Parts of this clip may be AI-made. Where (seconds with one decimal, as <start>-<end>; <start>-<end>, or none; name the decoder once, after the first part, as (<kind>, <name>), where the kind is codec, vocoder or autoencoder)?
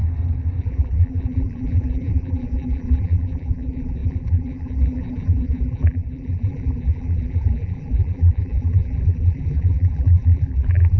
0.6-11.0 (vocoder, BigVGAN v2)